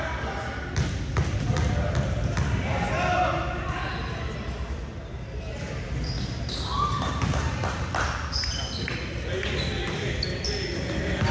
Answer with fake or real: real